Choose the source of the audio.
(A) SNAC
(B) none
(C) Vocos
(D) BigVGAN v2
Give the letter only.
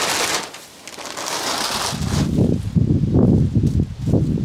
B